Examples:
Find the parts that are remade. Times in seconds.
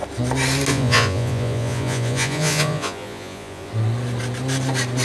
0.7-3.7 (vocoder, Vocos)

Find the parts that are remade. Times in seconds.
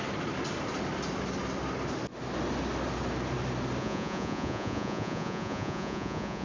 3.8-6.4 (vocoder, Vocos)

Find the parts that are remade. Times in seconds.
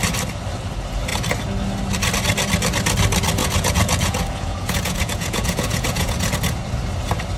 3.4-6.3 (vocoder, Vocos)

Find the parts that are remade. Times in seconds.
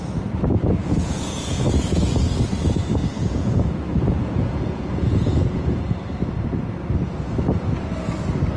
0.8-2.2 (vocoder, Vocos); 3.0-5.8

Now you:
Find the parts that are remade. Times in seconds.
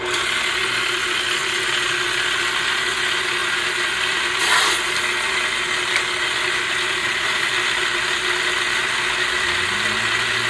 7.0-7.5 (vocoder, Vocos)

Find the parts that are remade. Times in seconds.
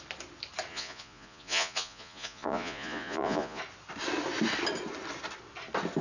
0.7-3.6 (vocoder, Vocos)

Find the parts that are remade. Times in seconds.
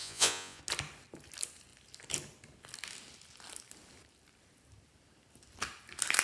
0.0-0.6 (vocoder, Vocos)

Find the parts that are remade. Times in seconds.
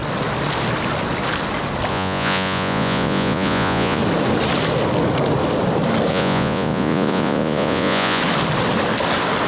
1.9-4.0 (vocoder, Vocos); 6.1-8.2